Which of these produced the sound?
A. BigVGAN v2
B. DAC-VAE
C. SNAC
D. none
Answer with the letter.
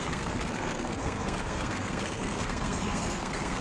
C